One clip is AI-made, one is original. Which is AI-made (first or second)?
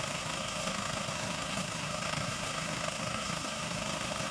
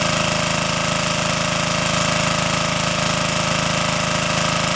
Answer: first